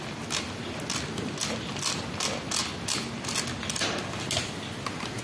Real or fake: real